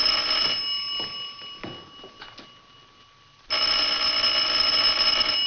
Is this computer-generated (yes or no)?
no